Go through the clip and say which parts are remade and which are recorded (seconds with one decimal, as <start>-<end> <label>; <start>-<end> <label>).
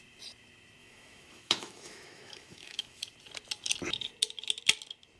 0.0-0.8 recorded; 0.8-3.0 remade; 3.0-5.2 recorded